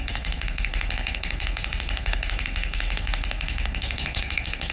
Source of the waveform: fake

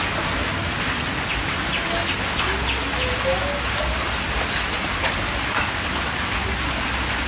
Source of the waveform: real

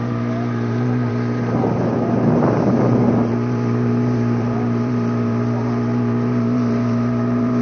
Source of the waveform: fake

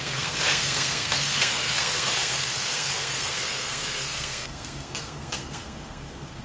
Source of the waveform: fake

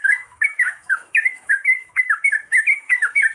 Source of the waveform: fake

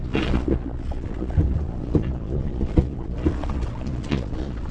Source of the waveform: fake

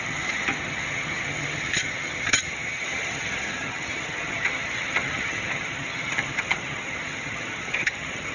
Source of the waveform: fake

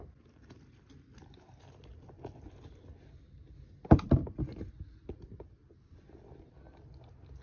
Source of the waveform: real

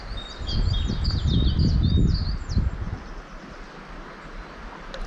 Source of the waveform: real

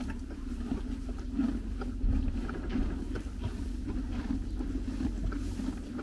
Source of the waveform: real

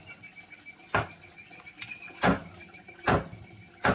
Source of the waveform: real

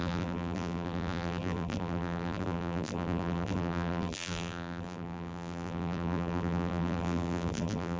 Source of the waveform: fake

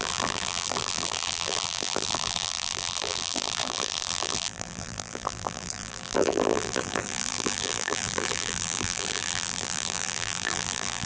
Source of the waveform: fake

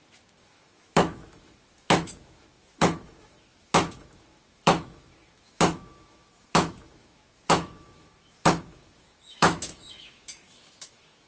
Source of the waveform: fake